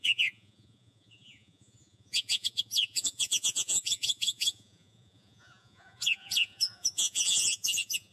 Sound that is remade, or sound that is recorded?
remade